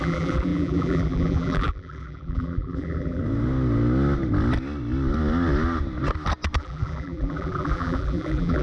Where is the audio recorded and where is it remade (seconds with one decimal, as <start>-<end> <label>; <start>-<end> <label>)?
0.0-3.2 remade; 3.2-6.6 recorded; 6.6-8.6 remade